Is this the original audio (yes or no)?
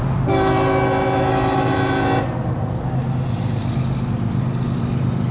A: yes